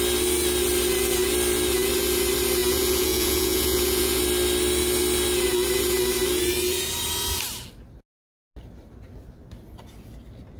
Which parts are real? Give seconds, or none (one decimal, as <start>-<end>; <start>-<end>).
0.0-2.6; 4.2-10.6